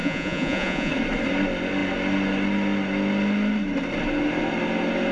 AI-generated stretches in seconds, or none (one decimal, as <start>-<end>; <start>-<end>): 0.0-0.9